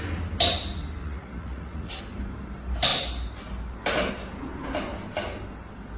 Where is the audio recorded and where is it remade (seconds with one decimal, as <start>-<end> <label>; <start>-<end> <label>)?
0.0-1.0 recorded; 1.0-2.0 remade; 2.0-6.0 recorded